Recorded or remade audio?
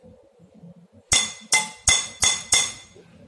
recorded